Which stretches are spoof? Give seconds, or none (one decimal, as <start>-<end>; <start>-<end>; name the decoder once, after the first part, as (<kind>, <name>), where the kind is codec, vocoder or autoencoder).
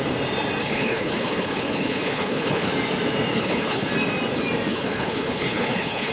0.6-2.7 (codec, HILCodec); 3.3-3.9; 4.7-6.1